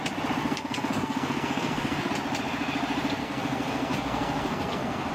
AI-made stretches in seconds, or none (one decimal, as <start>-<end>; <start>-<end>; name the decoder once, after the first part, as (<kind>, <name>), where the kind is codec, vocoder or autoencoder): 0.4-2.1 (codec, SNAC); 3.2-5.1